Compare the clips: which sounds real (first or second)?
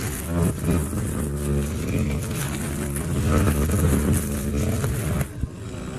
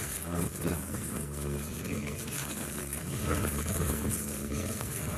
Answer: first